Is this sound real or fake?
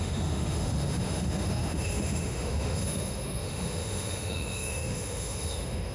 fake